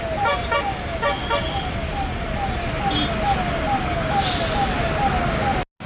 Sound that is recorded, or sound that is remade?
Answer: recorded